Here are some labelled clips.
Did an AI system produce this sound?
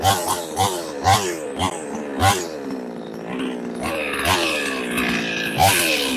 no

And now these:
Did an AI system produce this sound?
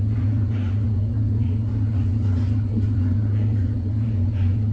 yes